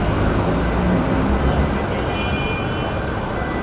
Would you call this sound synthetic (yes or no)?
no